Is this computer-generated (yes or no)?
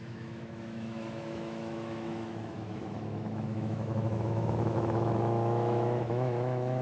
yes